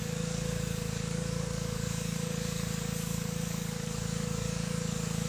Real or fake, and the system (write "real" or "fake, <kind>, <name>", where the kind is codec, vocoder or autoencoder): fake, codec, DAC